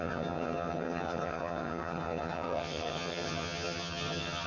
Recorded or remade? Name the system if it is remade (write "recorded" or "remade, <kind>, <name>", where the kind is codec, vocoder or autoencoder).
remade, vocoder, HiFi-GAN